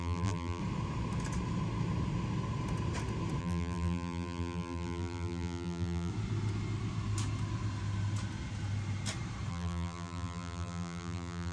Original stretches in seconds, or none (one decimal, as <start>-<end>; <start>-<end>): 0.6-3.4; 6.1-9.5